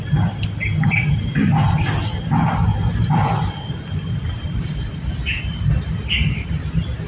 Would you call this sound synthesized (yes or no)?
no